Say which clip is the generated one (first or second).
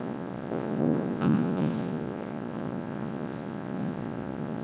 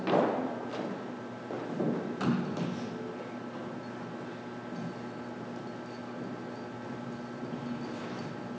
first